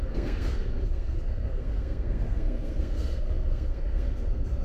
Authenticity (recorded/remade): remade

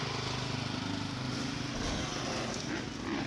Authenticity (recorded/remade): recorded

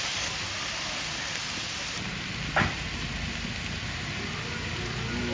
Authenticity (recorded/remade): recorded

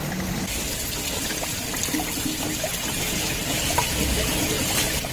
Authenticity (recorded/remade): recorded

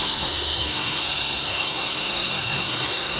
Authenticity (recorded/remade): remade